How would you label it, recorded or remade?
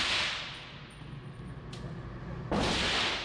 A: recorded